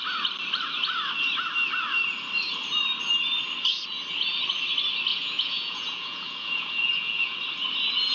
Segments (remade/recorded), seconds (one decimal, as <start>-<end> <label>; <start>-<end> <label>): 0.0-5.1 recorded; 5.1-7.4 remade; 7.4-8.1 recorded